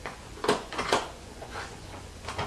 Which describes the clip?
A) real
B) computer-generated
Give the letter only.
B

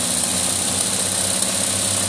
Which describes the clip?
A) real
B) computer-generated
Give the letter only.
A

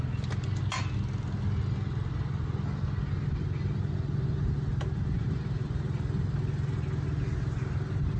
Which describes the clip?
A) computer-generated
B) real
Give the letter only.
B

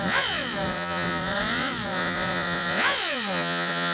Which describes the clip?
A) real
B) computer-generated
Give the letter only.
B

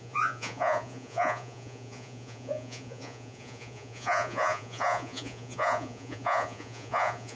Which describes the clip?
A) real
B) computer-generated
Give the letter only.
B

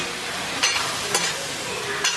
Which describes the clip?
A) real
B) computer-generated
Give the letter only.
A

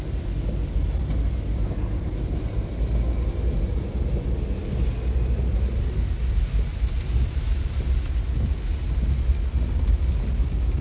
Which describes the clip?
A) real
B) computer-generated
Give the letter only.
A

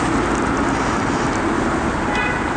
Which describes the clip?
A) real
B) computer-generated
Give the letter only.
A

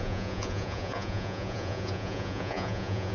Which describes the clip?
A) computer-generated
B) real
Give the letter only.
A